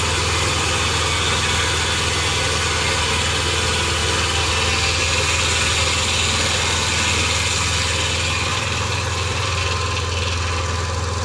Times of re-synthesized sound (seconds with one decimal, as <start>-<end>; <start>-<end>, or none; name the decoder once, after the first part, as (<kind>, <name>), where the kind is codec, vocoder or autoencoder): 8.5-9.6 (vocoder, BigVGAN v2)